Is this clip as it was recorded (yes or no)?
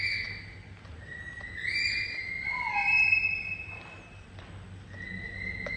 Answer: yes